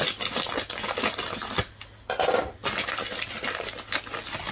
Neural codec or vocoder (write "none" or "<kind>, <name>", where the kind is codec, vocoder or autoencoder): none